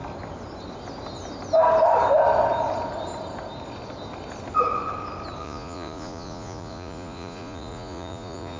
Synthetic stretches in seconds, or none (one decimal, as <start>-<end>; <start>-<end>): 5.4-8.6